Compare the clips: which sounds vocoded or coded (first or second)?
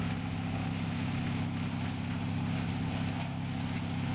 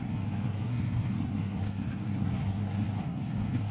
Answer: second